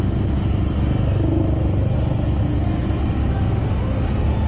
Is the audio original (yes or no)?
yes